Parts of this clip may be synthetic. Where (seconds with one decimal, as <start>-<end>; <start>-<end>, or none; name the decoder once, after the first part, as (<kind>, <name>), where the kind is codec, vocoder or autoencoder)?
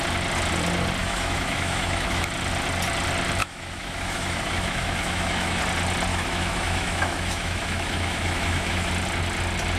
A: 1.0-2.3 (autoencoder, DAC-VAE); 3.4-5.6; 6.1-8.9